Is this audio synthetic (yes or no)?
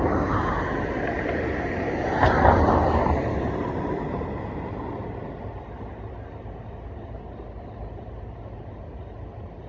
no